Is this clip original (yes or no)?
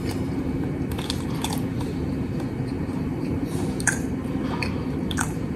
no